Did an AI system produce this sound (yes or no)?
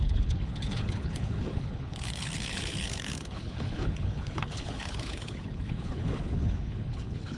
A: yes